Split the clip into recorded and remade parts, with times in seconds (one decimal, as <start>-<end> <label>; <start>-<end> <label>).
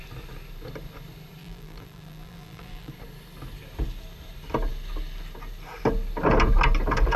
0.0-1.4 recorded; 1.4-2.9 remade; 2.9-7.2 recorded